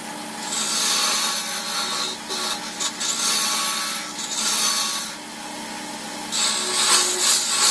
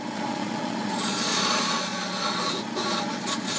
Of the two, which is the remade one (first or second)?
second